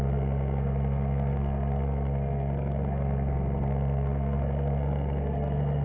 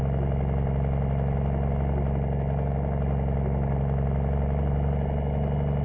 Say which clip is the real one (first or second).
second